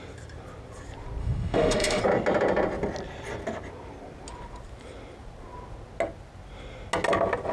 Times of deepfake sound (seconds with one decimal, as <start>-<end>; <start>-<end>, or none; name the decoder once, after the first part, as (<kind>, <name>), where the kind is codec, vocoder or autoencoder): 1.2-2.0 (autoencoder, DAC-VAE)

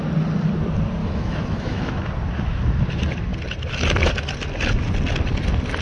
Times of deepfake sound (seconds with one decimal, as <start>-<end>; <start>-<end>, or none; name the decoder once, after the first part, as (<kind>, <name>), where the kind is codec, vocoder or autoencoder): 1.0-2.0 (autoencoder, DAC-VAE)

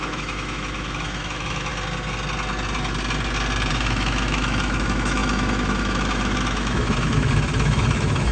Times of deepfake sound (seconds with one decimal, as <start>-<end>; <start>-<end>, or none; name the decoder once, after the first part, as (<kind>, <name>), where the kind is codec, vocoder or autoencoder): 0.0-1.7 (autoencoder, DAC-VAE); 3.7-8.3

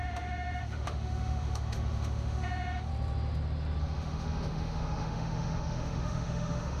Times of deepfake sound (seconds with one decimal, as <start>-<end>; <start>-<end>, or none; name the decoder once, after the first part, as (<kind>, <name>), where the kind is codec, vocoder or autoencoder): 0.0-2.9 (autoencoder, DAC-VAE); 3.8-6.8

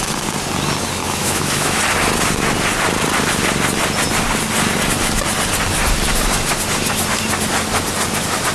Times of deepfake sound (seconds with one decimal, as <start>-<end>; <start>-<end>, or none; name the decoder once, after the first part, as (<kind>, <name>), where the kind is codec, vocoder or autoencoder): 1.0-1.8 (autoencoder, DAC-VAE)

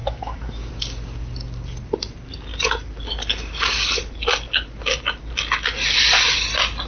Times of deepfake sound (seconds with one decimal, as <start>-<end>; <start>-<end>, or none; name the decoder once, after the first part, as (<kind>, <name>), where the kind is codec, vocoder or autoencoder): 0.0-0.7 (autoencoder, DAC-VAE)

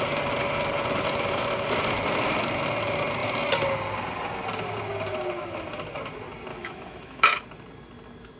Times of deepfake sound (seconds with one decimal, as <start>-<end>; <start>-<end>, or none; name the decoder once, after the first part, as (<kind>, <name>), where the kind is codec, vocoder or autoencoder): 6.5-7.4 (autoencoder, DAC-VAE)

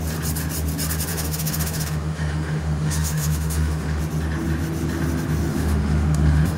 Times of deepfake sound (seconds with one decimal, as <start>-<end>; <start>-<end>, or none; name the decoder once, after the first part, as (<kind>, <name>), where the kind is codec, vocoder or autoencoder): 1.1-4.0 (autoencoder, DAC-VAE); 5.5-6.6